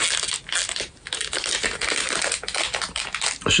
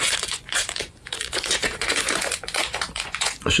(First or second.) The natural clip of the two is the first